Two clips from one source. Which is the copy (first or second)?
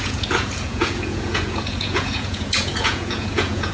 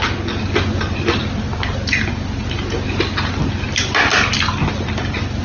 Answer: first